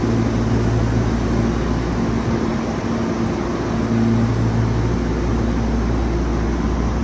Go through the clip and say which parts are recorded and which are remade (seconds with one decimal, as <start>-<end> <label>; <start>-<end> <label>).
0.0-7.0 recorded